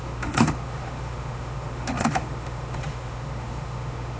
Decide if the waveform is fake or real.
fake